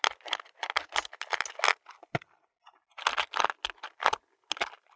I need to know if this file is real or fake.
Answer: real